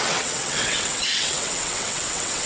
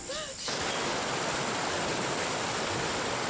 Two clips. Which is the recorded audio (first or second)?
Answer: second